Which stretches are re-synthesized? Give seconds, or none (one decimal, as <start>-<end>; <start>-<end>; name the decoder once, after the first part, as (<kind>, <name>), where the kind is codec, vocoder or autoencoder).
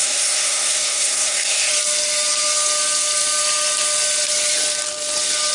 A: 0.0-1.7 (codec, SNAC)